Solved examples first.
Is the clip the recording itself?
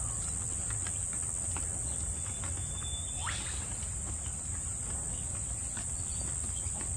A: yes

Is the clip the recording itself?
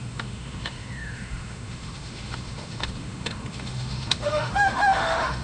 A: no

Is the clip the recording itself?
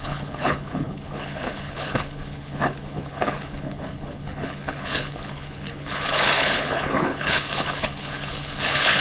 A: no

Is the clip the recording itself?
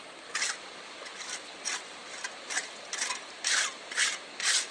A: yes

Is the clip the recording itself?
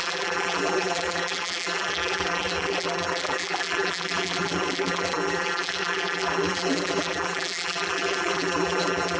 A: no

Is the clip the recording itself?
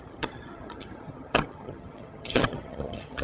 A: no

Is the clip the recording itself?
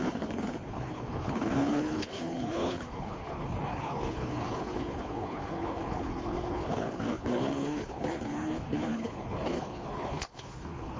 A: no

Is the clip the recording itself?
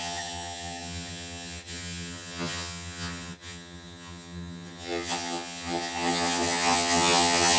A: no